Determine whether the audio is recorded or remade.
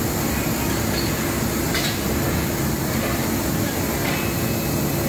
recorded